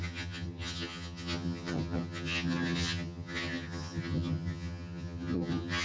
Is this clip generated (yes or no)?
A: yes